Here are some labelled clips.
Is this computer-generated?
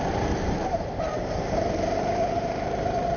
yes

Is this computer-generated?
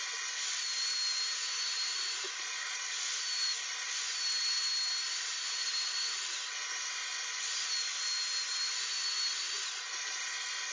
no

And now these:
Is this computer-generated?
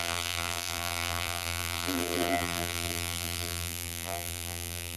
yes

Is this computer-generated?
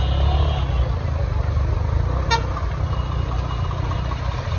no